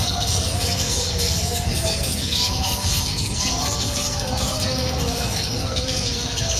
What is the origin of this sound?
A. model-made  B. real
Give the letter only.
A